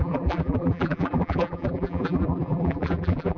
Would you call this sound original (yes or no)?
no